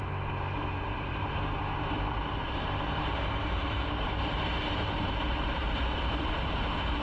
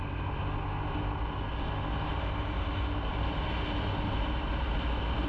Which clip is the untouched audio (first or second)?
second